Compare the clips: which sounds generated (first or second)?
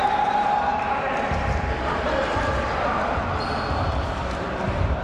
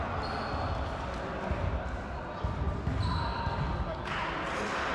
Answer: first